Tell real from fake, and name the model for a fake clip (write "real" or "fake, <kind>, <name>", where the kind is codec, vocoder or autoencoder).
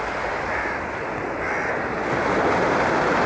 real